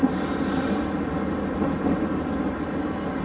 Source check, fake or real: real